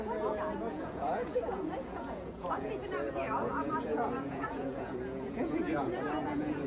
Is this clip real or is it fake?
fake